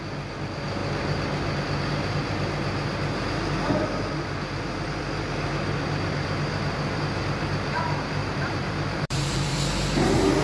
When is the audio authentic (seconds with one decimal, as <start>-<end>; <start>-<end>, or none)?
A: 0.0-8.2; 9.6-10.4